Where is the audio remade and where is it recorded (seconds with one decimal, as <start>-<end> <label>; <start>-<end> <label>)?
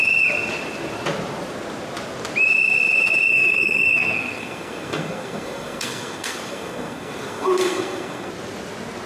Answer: 0.0-3.3 recorded; 3.3-8.3 remade; 8.3-9.1 recorded